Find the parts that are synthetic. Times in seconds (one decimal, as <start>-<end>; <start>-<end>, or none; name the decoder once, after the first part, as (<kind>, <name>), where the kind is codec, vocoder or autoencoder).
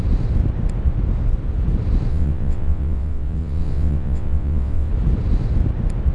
2.1-4.9 (vocoder, WaveNeXt)